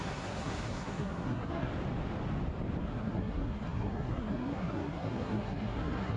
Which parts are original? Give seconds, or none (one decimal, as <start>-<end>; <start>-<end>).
1.7-2.8